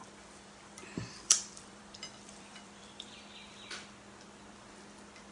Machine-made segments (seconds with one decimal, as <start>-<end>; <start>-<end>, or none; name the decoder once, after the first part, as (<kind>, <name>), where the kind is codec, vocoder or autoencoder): 0.0-3.2 (vocoder, BigVGAN v2)